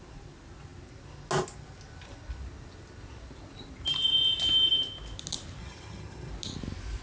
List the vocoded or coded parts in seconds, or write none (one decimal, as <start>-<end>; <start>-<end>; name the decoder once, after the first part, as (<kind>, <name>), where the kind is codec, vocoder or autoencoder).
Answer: 5.6-6.3 (vocoder, HiFi-GAN)